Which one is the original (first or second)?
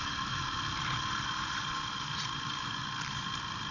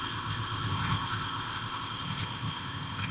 first